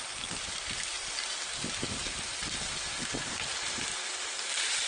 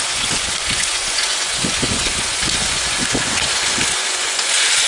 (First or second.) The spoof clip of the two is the second